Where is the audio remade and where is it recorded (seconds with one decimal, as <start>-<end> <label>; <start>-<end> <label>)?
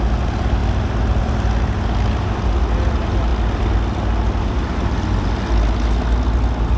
0.0-6.8 recorded